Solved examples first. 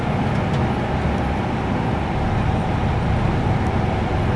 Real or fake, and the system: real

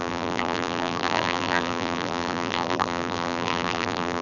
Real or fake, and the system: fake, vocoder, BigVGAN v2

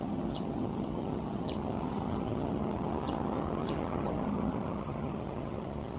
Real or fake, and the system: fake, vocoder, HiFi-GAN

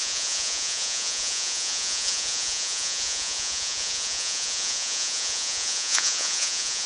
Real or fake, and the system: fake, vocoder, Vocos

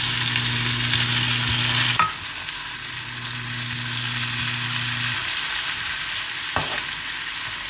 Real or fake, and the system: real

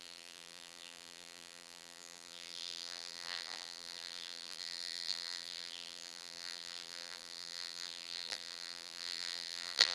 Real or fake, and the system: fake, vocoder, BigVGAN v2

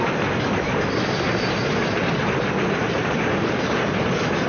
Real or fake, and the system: real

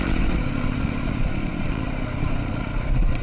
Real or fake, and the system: fake, vocoder, Vocos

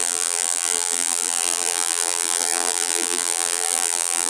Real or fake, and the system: fake, vocoder, BigVGAN v2